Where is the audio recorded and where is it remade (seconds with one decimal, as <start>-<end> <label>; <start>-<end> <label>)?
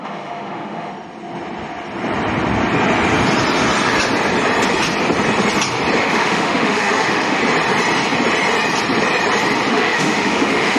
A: 0.0-0.9 remade; 0.9-6.0 recorded; 6.0-7.4 remade; 7.4-9.7 recorded; 9.7-10.8 remade